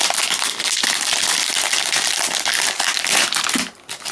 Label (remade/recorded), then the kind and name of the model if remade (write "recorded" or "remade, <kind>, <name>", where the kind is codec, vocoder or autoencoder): recorded